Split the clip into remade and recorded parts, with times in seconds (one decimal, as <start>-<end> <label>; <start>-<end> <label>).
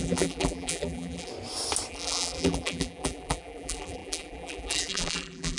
0.0-1.3 remade; 1.3-1.9 recorded; 1.9-5.6 remade